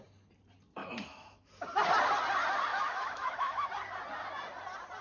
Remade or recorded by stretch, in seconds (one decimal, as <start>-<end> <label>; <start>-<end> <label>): 0.0-0.8 recorded; 0.8-1.5 remade; 1.5-2.7 recorded; 2.7-3.7 remade; 3.7-5.0 recorded